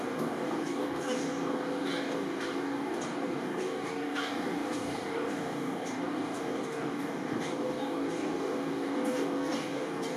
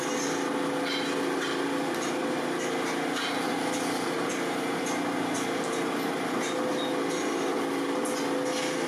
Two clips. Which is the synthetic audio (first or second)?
first